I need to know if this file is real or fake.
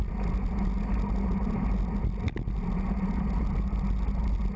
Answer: real